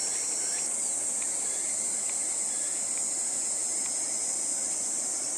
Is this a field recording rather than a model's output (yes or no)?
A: yes